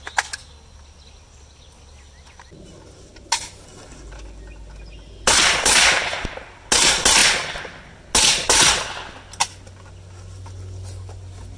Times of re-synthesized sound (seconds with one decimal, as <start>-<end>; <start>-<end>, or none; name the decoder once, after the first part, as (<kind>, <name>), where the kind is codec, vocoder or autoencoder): none